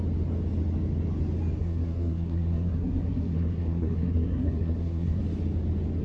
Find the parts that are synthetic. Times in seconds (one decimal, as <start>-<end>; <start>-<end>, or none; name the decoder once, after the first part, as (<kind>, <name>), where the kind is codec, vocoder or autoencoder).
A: 1.6-5.2 (codec, SNAC)